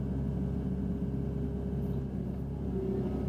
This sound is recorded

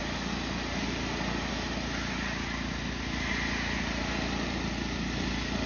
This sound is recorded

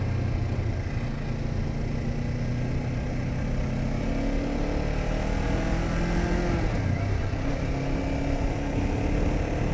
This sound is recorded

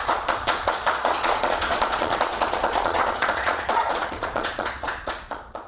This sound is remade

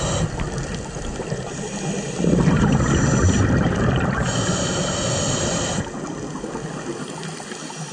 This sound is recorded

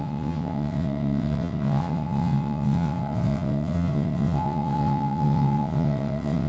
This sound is remade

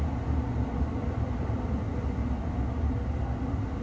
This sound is recorded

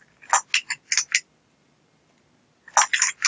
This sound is recorded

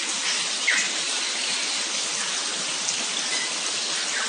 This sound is recorded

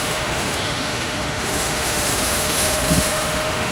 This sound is remade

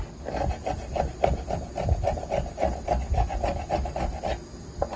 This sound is recorded